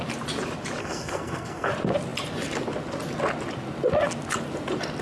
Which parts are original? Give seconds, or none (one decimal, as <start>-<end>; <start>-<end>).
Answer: 0.0-0.8; 1.7-5.0